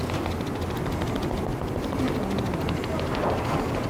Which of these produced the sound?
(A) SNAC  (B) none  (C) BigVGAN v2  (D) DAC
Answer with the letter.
B